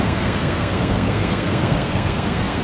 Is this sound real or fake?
fake